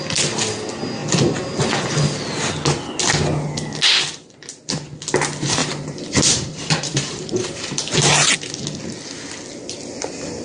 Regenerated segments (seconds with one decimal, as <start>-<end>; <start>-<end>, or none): 5.6-8.3